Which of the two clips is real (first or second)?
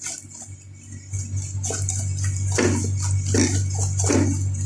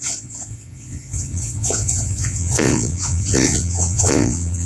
first